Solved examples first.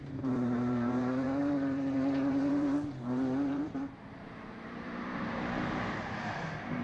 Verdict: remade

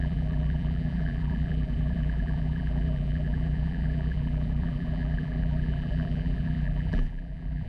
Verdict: remade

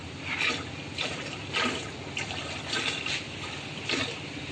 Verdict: remade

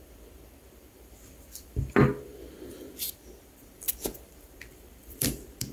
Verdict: remade